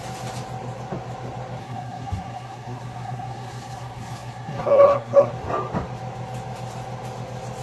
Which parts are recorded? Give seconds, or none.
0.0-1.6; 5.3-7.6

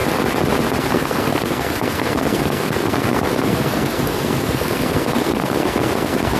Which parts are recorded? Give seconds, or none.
0.0-0.8

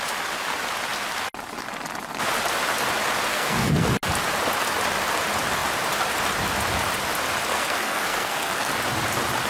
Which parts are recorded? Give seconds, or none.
0.0-3.3; 3.9-7.5; 8.7-9.5

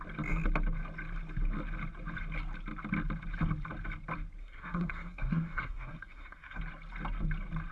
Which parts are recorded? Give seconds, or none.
0.0-4.4; 6.6-7.7

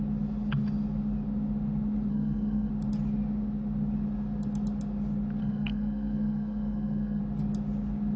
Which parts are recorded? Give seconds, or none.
0.0-2.1; 2.7-5.4; 7.2-8.2

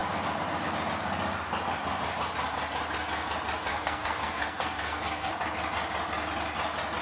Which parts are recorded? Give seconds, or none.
0.0-3.7; 5.3-7.0

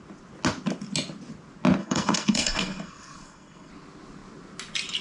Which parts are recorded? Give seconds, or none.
0.0-1.8; 3.7-5.0